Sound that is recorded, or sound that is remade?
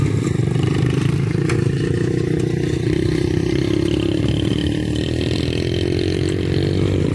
recorded